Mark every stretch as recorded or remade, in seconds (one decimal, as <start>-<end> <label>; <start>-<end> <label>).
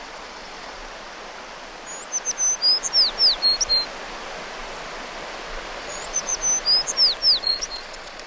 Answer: 0.0-0.8 remade; 0.8-5.8 recorded; 5.8-6.3 remade; 6.3-7.4 recorded; 7.4-8.3 remade